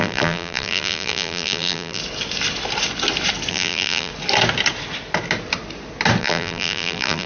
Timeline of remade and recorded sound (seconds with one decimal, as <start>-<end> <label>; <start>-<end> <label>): 0.0-2.0 remade; 2.0-3.5 recorded; 3.5-4.1 remade; 4.1-6.2 recorded; 6.2-7.3 remade